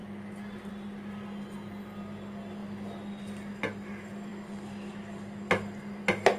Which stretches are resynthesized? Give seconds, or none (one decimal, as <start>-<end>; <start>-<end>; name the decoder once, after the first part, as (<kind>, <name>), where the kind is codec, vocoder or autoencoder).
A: none